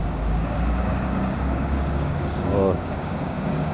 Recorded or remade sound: remade